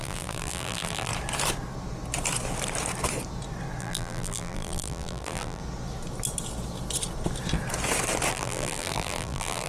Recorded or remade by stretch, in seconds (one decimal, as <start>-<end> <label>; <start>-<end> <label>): 0.0-1.1 remade; 1.1-3.8 recorded; 3.8-5.6 remade; 5.6-8.3 recorded; 8.3-9.7 remade